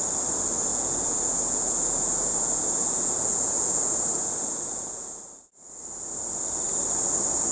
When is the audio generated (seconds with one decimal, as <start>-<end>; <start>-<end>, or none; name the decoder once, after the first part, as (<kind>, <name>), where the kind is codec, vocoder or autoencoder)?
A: 0.7-5.2 (vocoder, Vocos)